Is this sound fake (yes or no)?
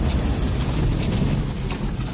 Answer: no